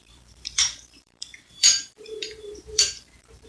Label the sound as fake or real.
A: fake